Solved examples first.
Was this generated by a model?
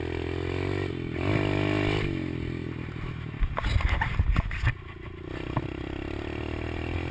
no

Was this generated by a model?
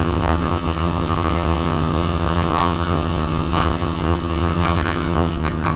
yes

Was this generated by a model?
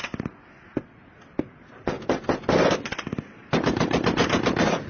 no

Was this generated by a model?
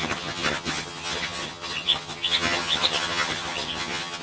yes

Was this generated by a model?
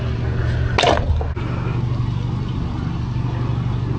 no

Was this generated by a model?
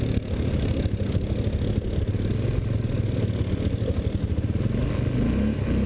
no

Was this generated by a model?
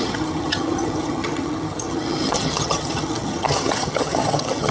yes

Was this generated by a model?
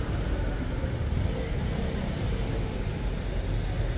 no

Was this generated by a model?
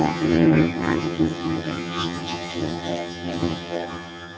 yes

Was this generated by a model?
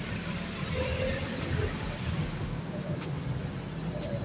no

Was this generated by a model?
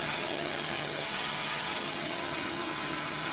yes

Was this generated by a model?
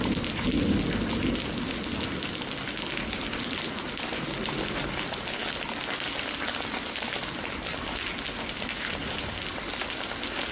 no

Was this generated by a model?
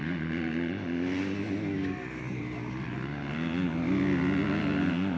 no